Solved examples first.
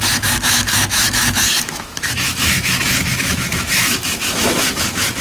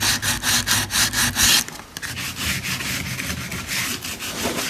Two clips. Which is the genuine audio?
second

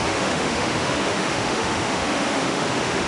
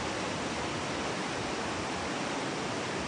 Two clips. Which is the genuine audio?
second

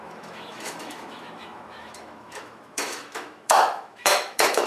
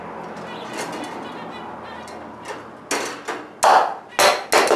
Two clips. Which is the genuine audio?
second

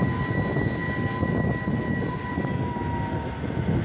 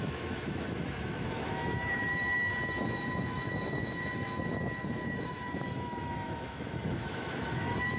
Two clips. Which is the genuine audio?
first